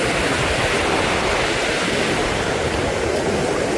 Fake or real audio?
real